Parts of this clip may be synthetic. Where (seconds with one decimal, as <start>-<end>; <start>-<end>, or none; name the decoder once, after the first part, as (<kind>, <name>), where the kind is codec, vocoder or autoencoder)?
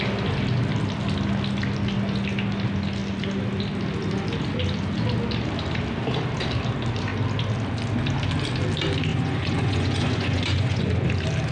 9.1-11.1 (vocoder, Vocos)